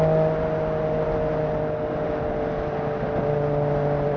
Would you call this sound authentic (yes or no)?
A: yes